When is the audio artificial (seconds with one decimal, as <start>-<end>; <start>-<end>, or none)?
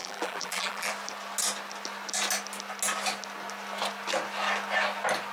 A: 0.0-0.9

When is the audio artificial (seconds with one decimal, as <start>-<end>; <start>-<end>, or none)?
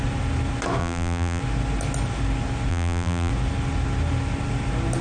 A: 0.8-1.4; 2.7-3.3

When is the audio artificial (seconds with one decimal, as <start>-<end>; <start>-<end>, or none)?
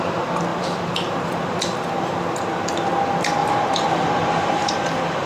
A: 3.4-4.7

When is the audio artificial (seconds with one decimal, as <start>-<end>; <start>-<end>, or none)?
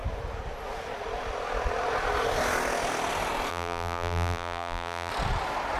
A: 3.5-5.1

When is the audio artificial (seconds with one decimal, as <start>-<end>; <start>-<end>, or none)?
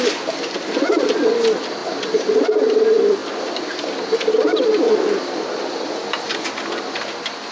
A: 0.0-1.8; 2.8-6.0; 6.8-7.5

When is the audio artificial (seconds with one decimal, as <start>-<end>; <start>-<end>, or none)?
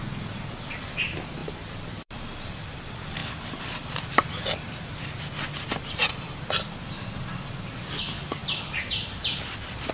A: 1.4-2.8; 3.2-4.9; 8.4-9.9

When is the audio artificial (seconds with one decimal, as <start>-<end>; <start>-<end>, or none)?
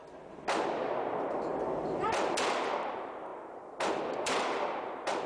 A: 2.0-5.3